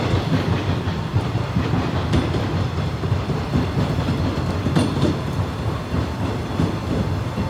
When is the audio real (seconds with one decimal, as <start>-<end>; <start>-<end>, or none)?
0.0-7.5